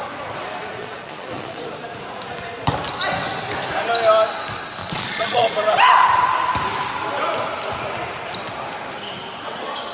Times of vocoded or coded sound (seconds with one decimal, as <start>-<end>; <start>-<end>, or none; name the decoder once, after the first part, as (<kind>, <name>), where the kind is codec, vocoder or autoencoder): 0.8-1.6 (vocoder, Vocos); 4.8-5.5